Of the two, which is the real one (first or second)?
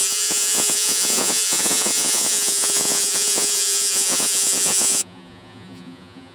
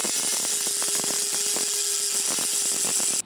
second